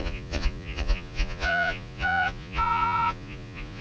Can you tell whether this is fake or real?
fake